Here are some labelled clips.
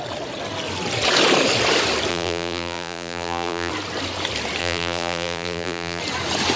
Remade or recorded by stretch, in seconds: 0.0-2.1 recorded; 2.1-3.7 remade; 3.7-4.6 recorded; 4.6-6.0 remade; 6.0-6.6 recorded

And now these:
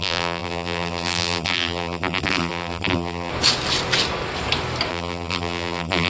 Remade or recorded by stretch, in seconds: 0.0-3.3 remade; 3.3-4.9 recorded; 4.9-6.1 remade

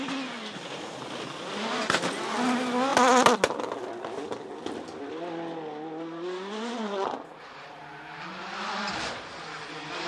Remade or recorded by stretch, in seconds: 0.0-10.1 recorded